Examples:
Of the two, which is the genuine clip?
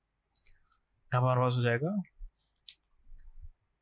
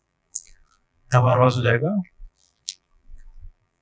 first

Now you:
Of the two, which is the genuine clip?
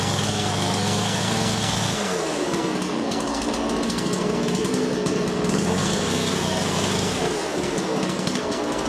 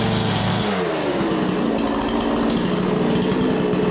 second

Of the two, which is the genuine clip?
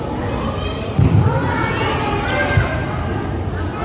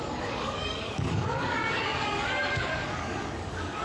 first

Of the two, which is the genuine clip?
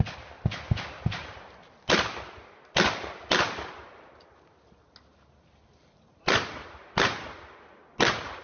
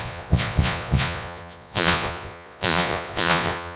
first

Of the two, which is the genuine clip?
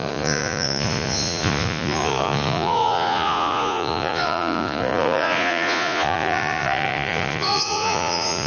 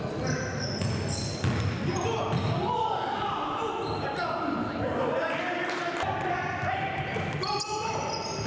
second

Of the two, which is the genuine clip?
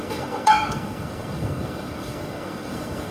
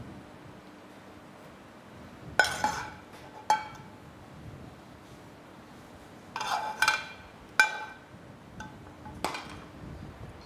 second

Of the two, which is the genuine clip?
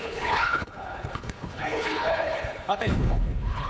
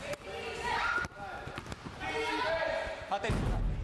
second